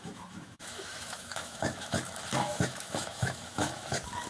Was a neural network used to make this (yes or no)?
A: yes